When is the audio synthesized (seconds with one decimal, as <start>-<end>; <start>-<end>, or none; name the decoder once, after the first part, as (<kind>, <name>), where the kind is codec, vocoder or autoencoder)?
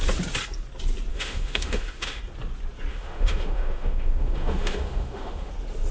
1.1-2.2 (autoencoder, DAC-VAE); 2.9-5.5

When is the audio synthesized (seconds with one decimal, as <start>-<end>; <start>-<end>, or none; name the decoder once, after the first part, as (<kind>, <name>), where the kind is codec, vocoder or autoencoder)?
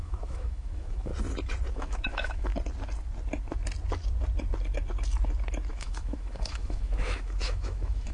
0.0-1.1 (autoencoder, DAC-VAE); 1.7-2.5; 5.7-8.1